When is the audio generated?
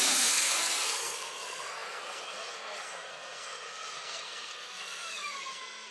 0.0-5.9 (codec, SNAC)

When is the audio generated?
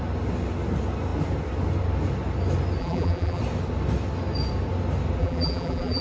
2.8-3.4 (vocoder, BigVGAN v2); 5.2-6.0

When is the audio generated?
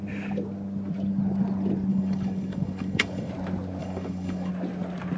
1.9-3.3 (codec, DAC); 3.8-4.5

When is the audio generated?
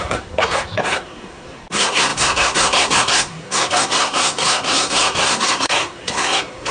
0.0-6.7 (codec, SNAC)